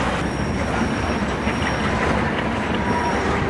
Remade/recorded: recorded